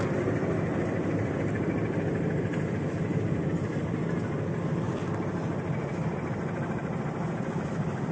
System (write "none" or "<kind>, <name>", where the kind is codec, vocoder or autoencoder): none